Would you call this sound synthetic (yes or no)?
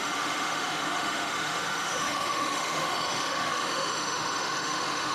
yes